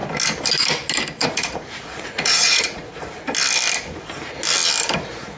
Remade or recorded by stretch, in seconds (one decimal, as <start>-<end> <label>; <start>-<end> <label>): 0.0-1.2 recorded; 1.2-3.0 remade; 3.0-5.4 recorded